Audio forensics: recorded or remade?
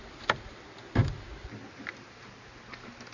recorded